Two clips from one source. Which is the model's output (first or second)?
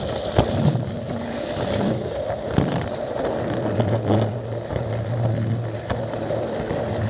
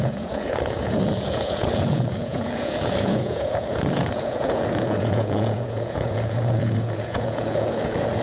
second